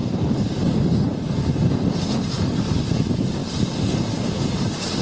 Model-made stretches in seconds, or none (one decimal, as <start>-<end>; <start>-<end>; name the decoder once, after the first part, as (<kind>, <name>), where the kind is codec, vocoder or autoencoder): none